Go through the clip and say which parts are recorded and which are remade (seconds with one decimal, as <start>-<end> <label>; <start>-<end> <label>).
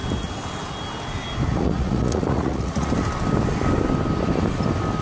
0.0-1.5 recorded; 1.5-2.9 remade; 2.9-5.0 recorded